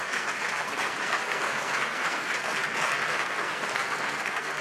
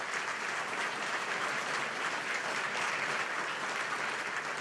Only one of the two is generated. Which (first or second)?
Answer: first